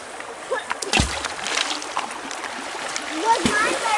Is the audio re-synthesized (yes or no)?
yes